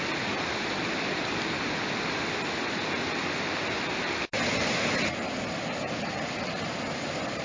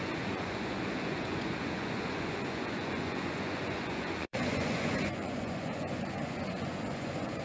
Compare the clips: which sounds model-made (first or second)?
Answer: second